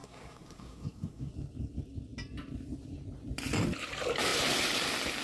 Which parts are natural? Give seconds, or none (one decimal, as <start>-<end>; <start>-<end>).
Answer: 1.3-5.2